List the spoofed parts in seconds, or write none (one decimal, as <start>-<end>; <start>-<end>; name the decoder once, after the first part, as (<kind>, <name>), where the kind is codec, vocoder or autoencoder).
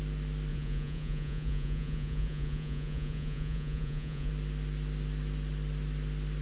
0.5-4.3 (vocoder, Vocos)